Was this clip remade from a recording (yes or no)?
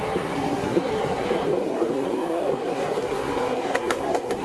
yes